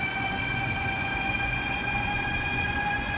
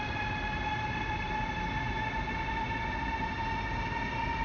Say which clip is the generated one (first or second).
first